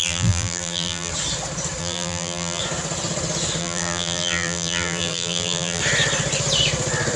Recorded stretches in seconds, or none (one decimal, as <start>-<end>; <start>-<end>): 1.1-1.8; 2.6-3.6; 5.8-7.2